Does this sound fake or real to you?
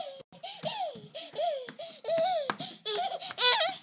real